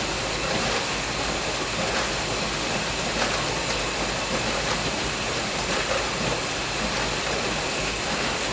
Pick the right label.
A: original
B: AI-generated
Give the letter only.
A